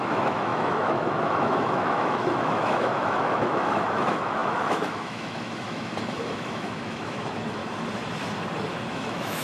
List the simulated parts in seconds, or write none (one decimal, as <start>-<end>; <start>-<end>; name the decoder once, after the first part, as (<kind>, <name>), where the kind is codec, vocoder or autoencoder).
0.0-7.6 (autoencoder, DAC-VAE); 8.9-9.4